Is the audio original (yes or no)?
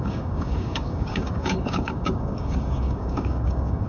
no